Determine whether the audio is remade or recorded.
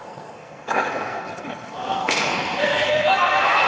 remade